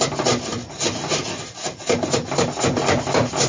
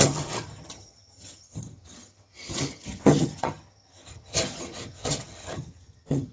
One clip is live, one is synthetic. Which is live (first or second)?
first